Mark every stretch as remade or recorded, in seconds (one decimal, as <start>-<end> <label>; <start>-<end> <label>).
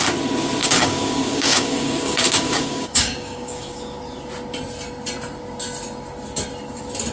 0.0-0.6 recorded; 0.6-4.0 remade; 4.0-7.1 recorded